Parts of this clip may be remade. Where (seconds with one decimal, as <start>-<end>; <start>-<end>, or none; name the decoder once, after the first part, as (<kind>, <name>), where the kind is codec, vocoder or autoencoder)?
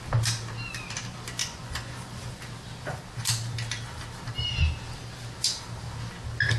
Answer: 1.4-2.4 (vocoder, Vocos)